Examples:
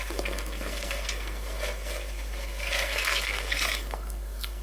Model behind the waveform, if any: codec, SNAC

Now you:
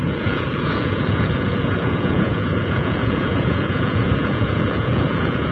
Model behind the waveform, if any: vocoder, Vocos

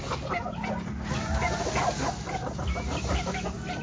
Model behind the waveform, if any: none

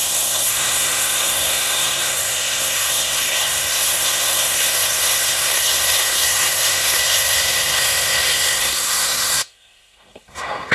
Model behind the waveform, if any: codec, SNAC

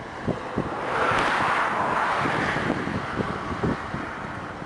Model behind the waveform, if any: none